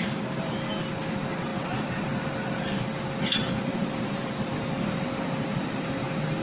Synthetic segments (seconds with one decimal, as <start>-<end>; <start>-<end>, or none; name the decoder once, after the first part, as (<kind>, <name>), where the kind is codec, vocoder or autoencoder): 3.7-4.7 (vocoder, BigVGAN v2)